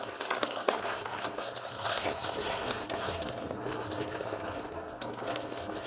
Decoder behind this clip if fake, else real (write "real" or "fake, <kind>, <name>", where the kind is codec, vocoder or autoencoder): fake, codec, SNAC